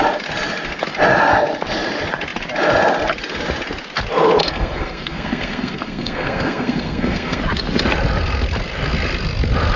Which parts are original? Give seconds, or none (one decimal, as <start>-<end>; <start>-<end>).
0.0-4.4; 7.4-9.8